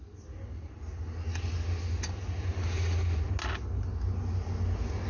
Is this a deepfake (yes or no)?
no